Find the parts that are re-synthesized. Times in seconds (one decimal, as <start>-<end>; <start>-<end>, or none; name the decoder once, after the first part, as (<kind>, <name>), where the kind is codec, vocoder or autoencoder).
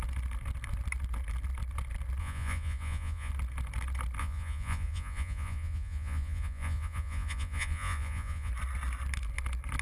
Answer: 2.2-3.3 (vocoder, Vocos); 4.2-8.5